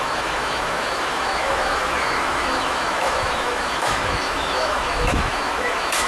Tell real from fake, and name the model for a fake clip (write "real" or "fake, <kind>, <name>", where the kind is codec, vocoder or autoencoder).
fake, autoencoder, DAC-VAE